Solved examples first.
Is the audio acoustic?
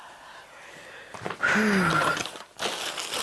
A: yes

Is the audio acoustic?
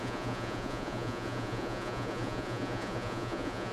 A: no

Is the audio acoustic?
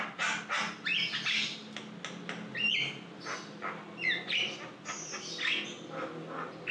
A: yes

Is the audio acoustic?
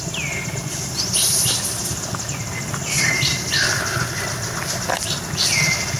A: yes